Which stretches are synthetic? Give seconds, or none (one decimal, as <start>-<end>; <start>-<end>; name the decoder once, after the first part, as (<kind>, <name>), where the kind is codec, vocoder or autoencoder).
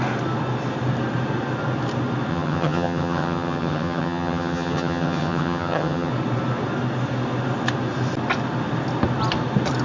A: 2.3-6.1 (vocoder, HiFi-GAN)